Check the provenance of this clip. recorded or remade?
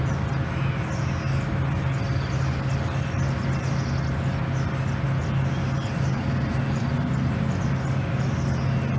recorded